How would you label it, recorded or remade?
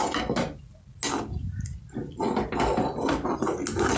recorded